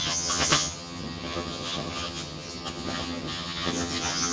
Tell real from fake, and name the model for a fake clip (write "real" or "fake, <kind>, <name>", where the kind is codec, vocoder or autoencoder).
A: fake, vocoder, HiFi-GAN